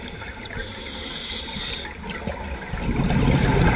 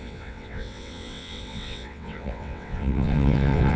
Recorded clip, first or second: first